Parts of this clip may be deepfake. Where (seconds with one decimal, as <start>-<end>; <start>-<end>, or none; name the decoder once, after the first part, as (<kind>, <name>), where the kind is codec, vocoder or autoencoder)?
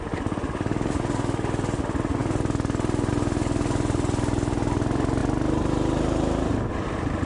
none